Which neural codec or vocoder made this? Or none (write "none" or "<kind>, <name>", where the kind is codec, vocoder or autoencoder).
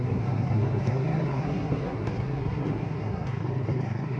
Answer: codec, SNAC